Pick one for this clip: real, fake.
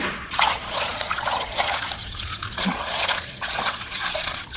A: fake